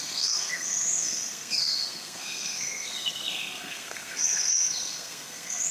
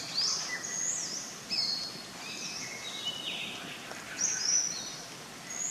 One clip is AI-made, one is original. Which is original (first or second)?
second